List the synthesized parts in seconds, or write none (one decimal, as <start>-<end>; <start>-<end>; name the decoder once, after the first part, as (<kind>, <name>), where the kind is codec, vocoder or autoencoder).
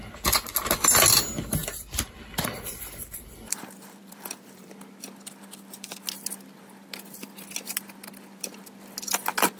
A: 1.6-4.7 (vocoder, BigVGAN v2)